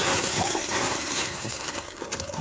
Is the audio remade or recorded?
remade